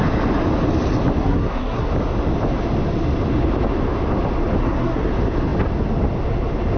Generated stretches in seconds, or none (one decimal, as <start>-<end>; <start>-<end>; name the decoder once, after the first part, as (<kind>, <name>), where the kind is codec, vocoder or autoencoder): 1.2-1.9 (codec, SNAC); 4.6-5.1